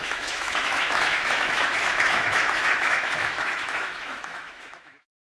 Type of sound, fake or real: fake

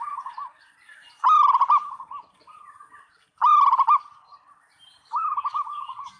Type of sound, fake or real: fake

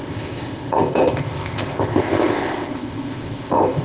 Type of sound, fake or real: fake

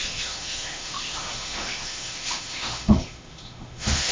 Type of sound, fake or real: fake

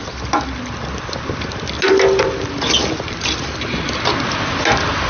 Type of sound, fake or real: real